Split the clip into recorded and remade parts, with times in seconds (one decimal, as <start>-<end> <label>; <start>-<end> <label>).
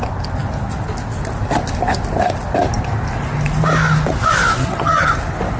0.0-4.6 recorded; 4.6-5.1 remade; 5.1-5.6 recorded